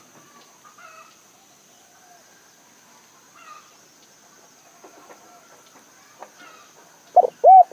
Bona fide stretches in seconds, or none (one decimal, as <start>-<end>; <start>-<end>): 0.0-7.7